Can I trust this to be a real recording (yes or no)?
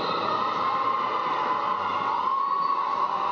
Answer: yes